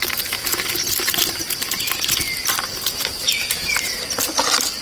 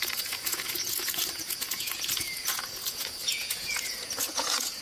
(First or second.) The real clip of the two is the first